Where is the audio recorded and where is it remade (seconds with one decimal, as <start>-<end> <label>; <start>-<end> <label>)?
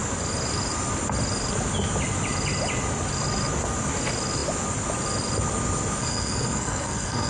0.0-6.0 recorded; 6.0-7.3 remade